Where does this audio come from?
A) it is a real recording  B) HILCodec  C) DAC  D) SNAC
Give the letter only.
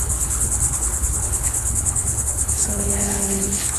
B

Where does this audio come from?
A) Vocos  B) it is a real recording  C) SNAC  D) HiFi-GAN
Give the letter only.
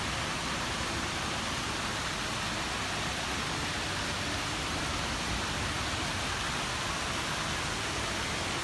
B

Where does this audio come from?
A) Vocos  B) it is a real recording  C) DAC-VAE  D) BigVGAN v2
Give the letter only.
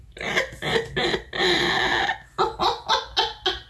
B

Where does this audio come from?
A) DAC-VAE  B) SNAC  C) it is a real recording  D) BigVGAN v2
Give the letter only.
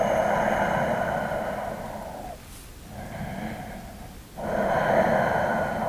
C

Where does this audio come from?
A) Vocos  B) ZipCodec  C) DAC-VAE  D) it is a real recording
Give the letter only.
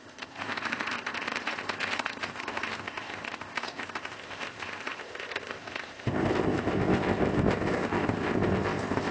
B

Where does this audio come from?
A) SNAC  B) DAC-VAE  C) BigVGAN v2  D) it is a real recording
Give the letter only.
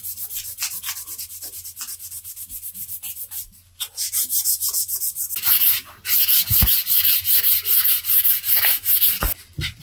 D